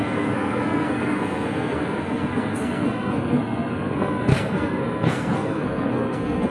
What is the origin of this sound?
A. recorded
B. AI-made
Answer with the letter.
B